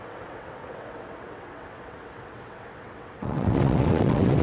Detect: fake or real fake